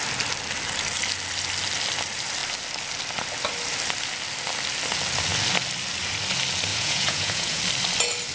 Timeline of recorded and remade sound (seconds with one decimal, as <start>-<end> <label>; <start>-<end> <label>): 0.0-6.7 recorded; 6.7-7.6 remade; 7.6-8.3 recorded